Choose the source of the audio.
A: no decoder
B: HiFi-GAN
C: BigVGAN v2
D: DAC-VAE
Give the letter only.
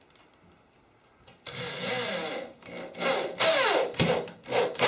A